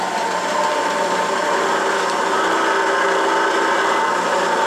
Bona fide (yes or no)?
yes